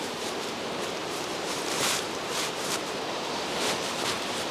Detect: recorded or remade remade